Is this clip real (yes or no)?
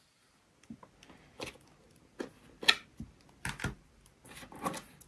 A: yes